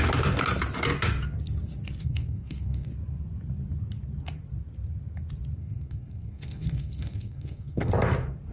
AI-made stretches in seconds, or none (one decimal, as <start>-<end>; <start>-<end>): 2.0-2.9; 5.6-7.9